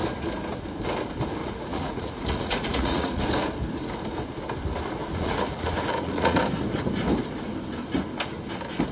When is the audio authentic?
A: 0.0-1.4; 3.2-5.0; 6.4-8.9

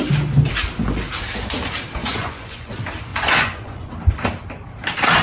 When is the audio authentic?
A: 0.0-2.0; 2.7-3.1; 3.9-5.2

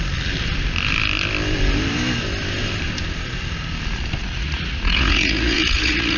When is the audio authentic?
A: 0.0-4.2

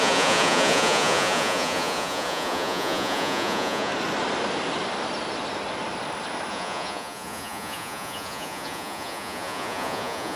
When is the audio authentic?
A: 3.9-6.5

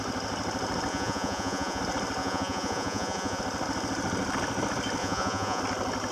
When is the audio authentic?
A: 0.0-0.9; 1.8-2.2; 3.4-5.0; 5.6-6.1

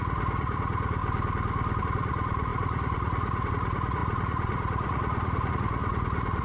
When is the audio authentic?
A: 1.0-1.8

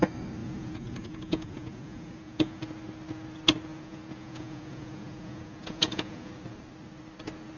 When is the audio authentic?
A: 0.0-0.4; 2.6-3.7; 6.3-7.6

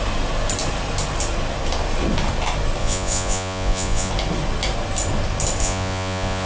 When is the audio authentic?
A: 0.0-2.8; 4.1-5.6